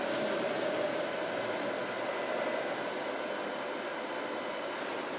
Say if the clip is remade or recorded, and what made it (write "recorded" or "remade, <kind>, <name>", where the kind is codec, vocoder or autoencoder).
recorded